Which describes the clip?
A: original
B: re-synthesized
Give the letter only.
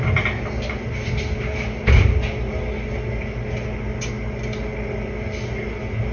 A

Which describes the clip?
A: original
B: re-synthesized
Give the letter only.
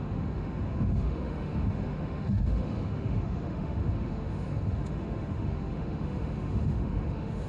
B